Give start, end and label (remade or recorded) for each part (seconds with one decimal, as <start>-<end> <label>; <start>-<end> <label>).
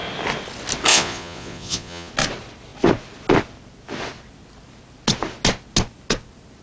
0.0-0.9 recorded; 0.9-2.1 remade; 2.1-6.6 recorded